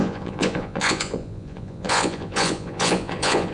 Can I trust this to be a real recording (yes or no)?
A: no